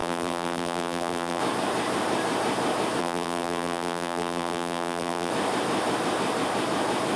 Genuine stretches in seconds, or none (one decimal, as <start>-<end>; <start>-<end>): 1.4-3.0; 5.3-7.2